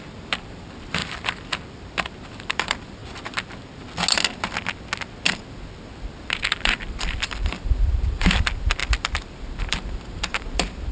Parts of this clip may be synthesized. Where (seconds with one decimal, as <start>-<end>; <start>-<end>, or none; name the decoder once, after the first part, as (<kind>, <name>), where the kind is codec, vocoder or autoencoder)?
0.0-1.0 (vocoder, BigVGAN v2); 2.2-3.0; 6.5-10.9